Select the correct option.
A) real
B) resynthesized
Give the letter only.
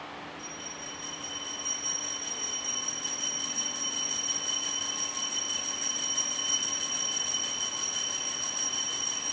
A